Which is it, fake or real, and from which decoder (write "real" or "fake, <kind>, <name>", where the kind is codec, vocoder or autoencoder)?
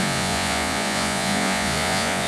fake, vocoder, Vocos